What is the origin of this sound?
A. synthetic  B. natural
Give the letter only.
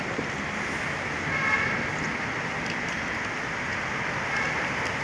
B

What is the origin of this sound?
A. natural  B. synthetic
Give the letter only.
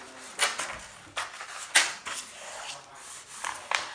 A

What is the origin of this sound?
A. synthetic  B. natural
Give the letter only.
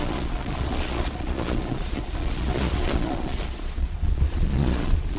A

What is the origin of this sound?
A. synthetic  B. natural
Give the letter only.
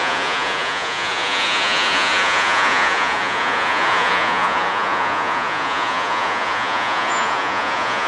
A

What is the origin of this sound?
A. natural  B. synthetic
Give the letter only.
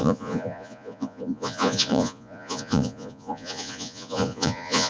B